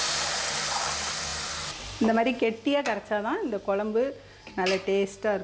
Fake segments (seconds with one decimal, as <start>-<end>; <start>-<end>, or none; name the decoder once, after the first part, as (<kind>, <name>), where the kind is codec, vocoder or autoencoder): none